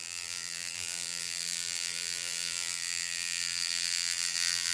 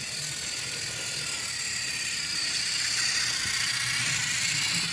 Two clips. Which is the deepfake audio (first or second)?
first